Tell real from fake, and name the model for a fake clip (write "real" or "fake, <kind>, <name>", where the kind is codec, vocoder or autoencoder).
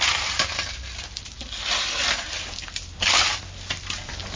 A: real